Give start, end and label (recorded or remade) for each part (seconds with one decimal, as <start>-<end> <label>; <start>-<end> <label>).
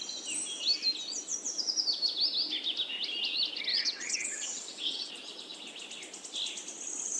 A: 0.0-3.7 recorded; 3.7-5.1 remade; 5.1-7.2 recorded